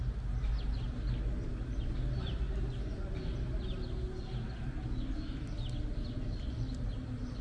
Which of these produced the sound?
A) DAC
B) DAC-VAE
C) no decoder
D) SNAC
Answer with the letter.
C